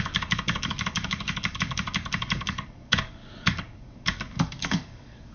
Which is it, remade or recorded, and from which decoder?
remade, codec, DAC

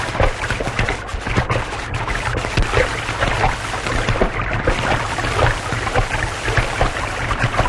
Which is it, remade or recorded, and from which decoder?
recorded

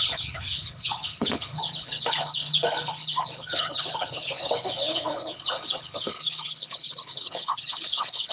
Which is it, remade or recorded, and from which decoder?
remade, codec, HILCodec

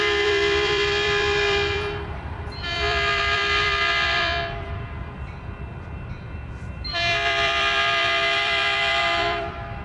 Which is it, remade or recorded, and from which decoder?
remade, vocoder, BigVGAN v2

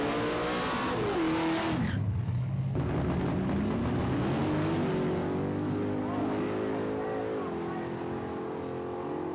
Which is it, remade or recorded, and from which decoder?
recorded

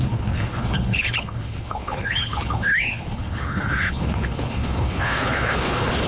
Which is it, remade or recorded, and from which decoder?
remade, codec, HILCodec